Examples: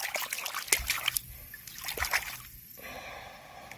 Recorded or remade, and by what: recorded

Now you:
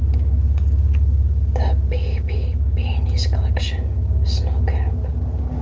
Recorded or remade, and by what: recorded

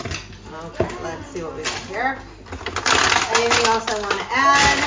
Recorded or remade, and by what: recorded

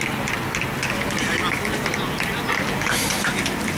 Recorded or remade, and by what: recorded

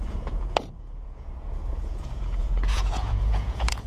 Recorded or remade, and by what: remade, vocoder, Vocos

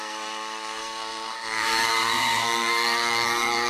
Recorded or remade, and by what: remade, codec, SNAC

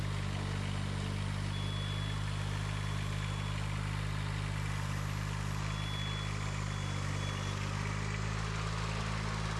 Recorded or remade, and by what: recorded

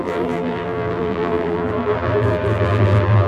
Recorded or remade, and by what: remade, vocoder, BigVGAN v2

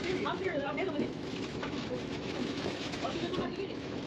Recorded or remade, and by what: remade, autoencoder, DAC-VAE